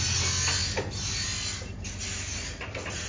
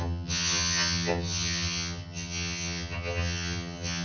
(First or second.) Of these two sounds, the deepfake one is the second